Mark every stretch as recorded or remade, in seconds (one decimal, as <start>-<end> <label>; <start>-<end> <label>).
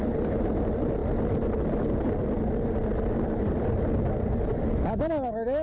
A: 0.0-5.6 recorded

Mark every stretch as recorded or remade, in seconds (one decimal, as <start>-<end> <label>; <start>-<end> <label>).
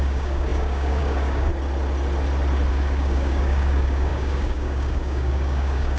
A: 0.0-1.5 remade; 1.5-2.7 recorded; 2.7-6.0 remade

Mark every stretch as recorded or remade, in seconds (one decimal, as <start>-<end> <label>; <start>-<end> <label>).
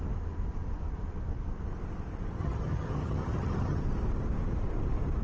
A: 0.0-2.4 recorded; 2.4-3.8 remade; 3.8-5.2 recorded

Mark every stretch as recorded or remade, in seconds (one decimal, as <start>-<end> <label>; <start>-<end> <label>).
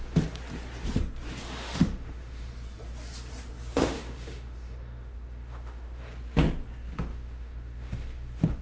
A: 0.0-1.6 recorded; 1.6-2.5 remade; 2.5-3.7 recorded; 3.7-6.0 remade; 6.0-7.1 recorded; 7.1-8.6 remade